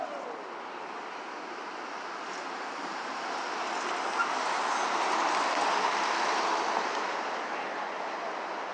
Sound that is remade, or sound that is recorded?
recorded